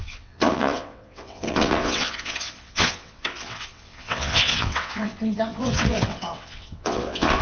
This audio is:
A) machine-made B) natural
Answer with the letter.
A